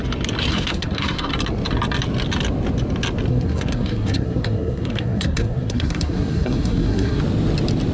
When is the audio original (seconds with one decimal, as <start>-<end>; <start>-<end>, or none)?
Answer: 0.0-0.5; 1.3-3.3; 7.2-7.9